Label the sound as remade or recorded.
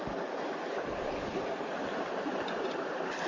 recorded